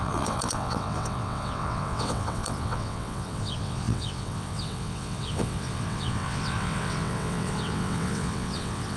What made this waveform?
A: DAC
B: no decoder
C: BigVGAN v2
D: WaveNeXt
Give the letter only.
D